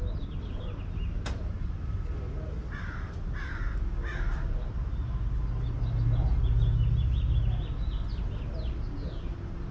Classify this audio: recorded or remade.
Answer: recorded